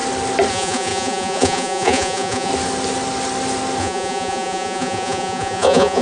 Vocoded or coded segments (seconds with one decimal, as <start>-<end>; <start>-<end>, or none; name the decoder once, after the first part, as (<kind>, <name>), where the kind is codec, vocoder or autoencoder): 0.5-2.5 (vocoder, Vocos); 3.8-6.0

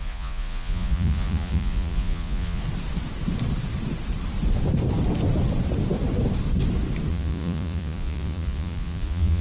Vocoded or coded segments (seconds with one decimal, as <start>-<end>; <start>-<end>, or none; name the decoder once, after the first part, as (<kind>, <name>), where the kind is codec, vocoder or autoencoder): 0.0-2.6 (vocoder, Vocos); 7.1-9.4

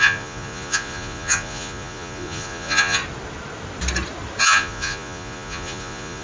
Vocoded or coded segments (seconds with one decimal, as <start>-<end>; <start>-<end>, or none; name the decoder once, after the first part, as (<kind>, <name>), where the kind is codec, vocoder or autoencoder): 0.0-3.0 (vocoder, Vocos); 4.4-6.2

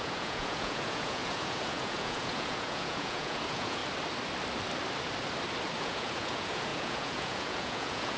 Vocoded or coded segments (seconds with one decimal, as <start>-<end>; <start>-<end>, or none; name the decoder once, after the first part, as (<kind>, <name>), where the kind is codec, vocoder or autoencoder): 0.0-3.8 (vocoder, Vocos); 5.8-8.2

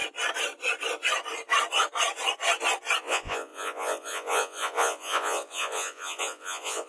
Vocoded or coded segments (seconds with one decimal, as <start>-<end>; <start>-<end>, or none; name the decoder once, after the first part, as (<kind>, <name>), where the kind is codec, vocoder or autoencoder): 3.0-6.9 (vocoder, Vocos)

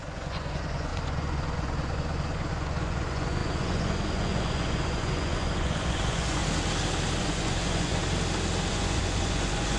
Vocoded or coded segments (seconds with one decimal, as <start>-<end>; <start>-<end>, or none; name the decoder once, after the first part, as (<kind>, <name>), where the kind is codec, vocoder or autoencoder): 0.0-6.4 (vocoder, Vocos); 7.2-8.0; 8.7-9.8

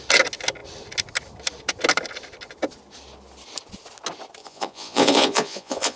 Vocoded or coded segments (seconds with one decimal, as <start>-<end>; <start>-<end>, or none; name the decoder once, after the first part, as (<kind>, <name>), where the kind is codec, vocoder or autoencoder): 4.4-6.0 (vocoder, Vocos)

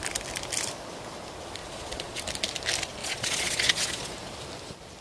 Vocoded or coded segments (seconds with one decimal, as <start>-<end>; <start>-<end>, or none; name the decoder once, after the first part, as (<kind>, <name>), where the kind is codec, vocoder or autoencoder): 1.6-2.2 (vocoder, Vocos); 3.0-4.1